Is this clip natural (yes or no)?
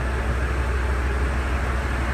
yes